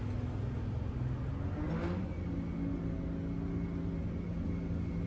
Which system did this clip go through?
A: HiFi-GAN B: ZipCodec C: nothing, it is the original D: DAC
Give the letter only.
C